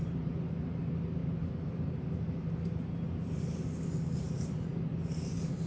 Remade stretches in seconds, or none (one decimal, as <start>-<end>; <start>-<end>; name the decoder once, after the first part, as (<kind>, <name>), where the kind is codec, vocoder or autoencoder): none

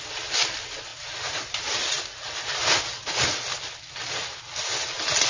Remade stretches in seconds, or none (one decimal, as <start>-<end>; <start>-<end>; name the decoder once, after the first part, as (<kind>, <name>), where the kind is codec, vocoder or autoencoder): none

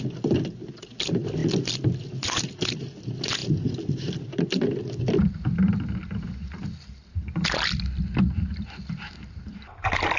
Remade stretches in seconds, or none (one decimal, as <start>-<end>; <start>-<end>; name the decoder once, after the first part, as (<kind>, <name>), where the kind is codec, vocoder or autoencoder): none

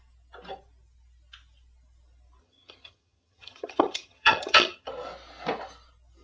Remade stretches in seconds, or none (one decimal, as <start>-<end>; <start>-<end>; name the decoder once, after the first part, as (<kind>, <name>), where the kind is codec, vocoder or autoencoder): 2.4-4.9 (vocoder, HiFi-GAN)

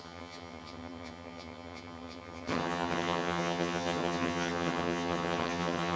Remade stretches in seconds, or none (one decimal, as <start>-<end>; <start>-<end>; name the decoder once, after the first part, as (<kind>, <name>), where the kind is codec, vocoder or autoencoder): 0.0-6.0 (vocoder, HiFi-GAN)